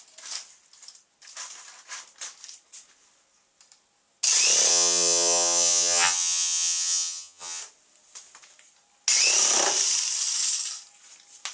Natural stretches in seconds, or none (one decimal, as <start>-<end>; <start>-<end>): 0.0-4.7; 7.6-11.5